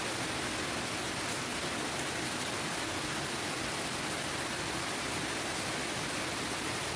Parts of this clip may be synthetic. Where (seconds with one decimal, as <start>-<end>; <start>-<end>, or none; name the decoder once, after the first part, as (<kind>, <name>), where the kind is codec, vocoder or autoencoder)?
none